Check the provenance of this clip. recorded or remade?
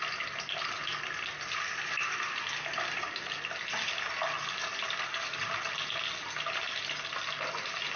recorded